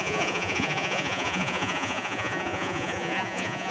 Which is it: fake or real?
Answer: fake